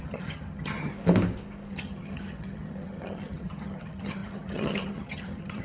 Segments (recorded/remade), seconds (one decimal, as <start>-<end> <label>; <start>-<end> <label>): 0.0-0.9 remade; 0.9-1.7 recorded; 1.7-5.6 remade